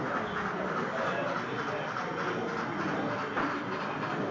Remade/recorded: recorded